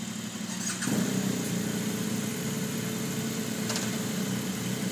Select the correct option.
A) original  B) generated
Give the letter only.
A